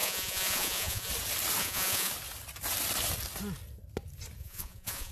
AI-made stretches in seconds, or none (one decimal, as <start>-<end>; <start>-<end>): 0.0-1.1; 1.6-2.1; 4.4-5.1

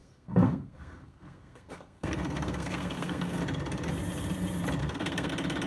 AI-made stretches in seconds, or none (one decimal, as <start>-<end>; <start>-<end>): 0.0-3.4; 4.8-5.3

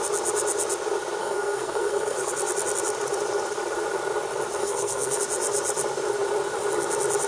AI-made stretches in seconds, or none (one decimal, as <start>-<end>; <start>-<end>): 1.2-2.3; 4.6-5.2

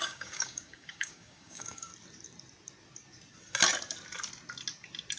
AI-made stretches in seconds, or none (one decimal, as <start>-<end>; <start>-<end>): 0.0-1.9

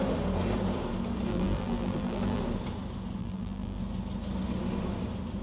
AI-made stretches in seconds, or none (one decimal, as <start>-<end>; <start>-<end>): 1.3-2.4; 3.2-3.8